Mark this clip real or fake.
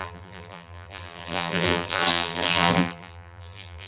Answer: fake